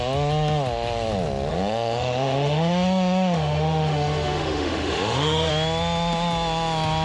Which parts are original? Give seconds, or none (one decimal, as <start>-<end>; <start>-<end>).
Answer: 0.0-1.5; 5.5-7.0